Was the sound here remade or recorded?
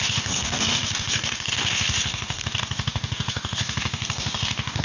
remade